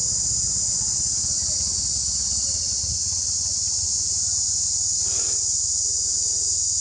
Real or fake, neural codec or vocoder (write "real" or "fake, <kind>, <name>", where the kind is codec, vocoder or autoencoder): real